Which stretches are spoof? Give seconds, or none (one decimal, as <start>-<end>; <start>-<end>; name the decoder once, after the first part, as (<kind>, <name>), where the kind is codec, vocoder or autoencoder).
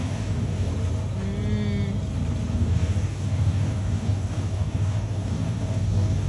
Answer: 0.0-0.7 (codec, DAC); 2.5-6.3